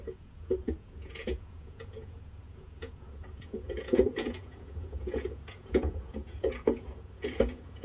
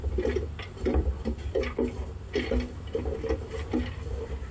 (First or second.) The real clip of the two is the second